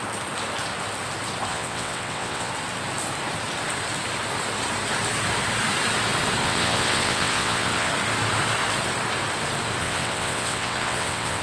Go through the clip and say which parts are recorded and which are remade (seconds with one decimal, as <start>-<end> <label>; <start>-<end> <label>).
0.0-1.5 recorded; 1.5-2.5 remade; 2.5-6.4 recorded; 6.4-7.9 remade; 7.9-9.8 recorded; 9.8-11.4 remade